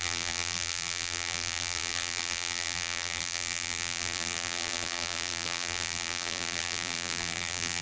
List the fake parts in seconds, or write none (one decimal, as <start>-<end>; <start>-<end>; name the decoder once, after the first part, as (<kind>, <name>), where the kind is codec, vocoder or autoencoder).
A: 0.0-7.8 (vocoder, BigVGAN v2)